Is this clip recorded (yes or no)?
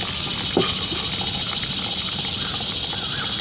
yes